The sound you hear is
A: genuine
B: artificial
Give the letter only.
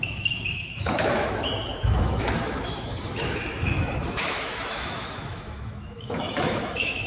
B